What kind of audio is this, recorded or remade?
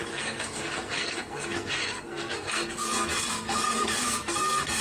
remade